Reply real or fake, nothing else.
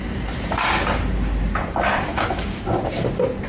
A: real